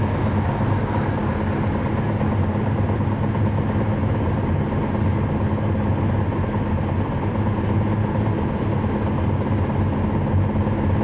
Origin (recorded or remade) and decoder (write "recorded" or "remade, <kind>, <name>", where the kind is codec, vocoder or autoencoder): recorded